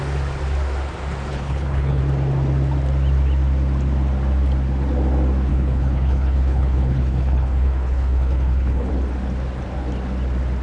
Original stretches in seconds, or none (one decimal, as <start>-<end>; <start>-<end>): 0.0-1.3; 2.0-5.5; 8.9-10.6